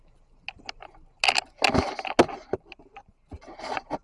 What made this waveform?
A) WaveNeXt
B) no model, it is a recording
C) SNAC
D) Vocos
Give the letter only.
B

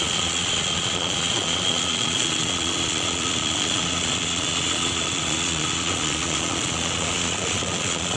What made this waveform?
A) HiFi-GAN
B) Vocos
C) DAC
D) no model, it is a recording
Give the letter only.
B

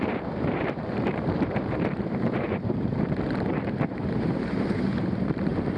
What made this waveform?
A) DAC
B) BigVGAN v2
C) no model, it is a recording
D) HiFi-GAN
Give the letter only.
B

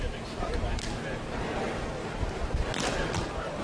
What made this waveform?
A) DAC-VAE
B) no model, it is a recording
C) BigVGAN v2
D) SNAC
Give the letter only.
B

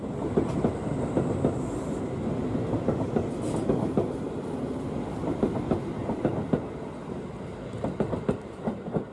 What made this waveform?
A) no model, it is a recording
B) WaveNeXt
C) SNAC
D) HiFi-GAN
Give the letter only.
A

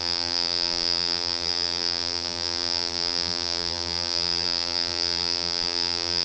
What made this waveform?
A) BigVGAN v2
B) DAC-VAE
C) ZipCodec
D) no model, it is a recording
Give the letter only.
A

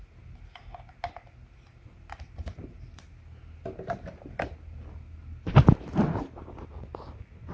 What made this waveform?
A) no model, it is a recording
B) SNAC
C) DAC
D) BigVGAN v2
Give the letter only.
A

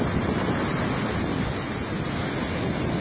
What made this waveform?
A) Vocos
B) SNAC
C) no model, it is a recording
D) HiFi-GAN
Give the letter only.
C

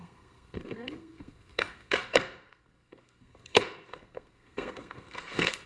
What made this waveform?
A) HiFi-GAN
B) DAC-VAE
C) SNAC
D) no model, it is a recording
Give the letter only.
C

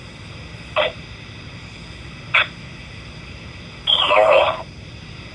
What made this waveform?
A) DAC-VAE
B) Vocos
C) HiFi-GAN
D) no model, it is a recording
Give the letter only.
D